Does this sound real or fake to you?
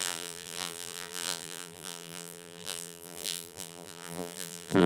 fake